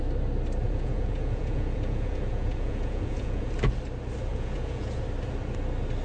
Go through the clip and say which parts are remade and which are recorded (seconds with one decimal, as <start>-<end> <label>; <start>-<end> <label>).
0.0-0.6 recorded; 0.6-3.5 remade; 3.5-4.3 recorded; 4.3-5.0 remade; 5.0-6.0 recorded